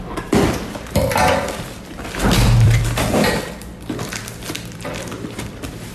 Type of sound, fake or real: fake